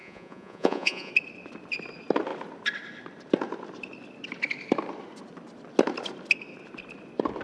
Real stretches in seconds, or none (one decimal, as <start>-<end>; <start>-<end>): 1.1-7.4